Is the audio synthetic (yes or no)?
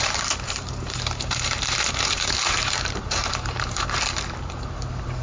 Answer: yes